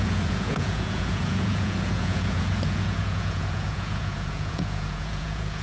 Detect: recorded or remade remade